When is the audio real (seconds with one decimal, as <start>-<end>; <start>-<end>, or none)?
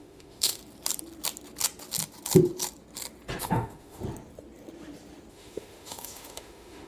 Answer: 0.6-3.4; 4.0-5.3